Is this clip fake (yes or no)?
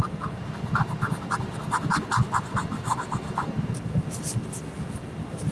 no